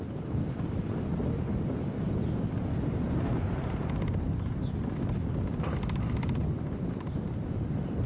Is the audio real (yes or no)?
yes